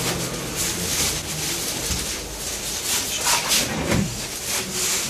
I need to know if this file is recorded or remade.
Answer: recorded